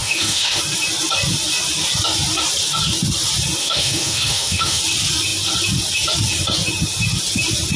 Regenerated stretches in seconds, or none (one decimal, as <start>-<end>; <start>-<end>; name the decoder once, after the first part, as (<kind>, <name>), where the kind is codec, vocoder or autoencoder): 0.0-0.6 (autoencoder, DAC-VAE); 3.6-4.8